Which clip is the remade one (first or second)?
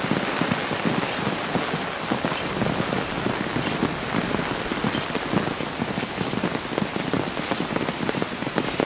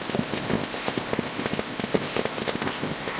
second